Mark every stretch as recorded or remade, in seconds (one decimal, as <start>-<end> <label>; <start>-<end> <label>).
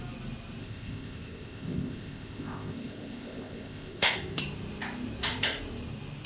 0.0-0.6 recorded; 0.6-4.4 remade; 4.4-6.3 recorded